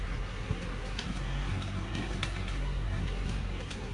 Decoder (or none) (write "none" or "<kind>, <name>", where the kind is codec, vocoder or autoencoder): codec, SNAC